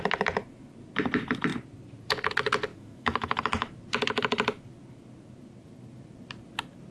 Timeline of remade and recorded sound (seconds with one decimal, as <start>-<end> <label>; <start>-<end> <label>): 0.0-2.7 recorded; 2.7-3.7 remade; 3.7-6.9 recorded